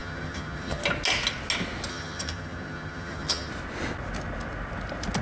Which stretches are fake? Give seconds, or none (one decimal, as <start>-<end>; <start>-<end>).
0.0-0.8; 1.9-3.5